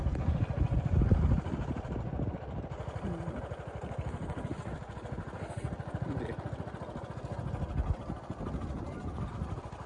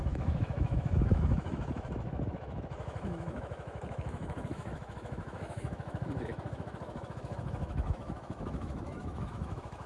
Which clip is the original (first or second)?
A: first